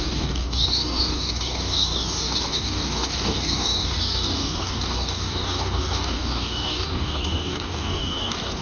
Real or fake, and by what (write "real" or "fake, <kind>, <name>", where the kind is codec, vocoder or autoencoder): fake, codec, DAC